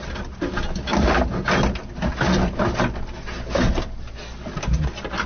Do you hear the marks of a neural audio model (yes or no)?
no